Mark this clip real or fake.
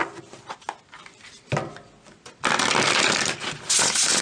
real